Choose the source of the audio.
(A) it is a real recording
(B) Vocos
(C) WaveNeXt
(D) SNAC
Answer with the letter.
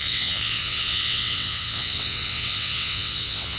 C